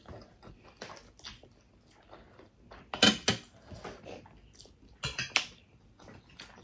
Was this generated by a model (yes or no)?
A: no